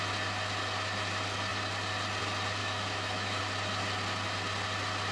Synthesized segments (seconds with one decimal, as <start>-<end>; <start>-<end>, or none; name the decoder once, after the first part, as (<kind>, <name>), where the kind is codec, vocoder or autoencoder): 2.6-3.4 (autoencoder, DAC-VAE)